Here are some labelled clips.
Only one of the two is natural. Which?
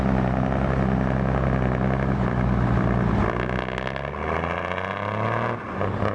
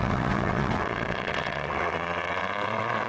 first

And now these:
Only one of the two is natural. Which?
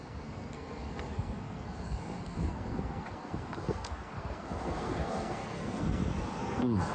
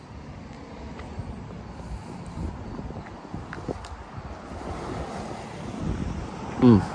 second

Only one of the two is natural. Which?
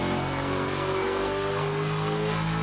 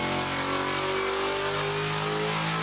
second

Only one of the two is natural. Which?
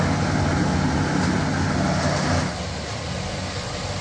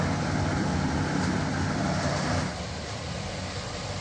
first